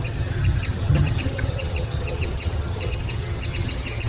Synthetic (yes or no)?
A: yes